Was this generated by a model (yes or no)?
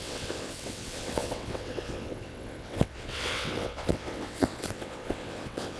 yes